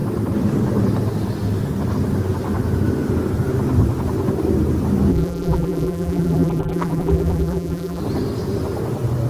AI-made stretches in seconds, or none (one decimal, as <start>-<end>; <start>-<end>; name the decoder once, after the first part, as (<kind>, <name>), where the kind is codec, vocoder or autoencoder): 5.1-8.0 (vocoder, BigVGAN v2)